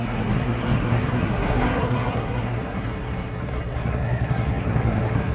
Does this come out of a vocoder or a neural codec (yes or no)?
yes